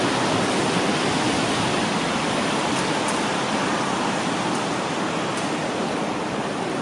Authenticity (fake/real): real